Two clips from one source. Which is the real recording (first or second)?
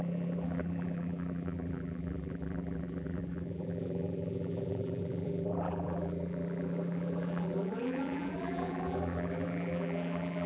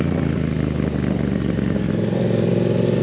second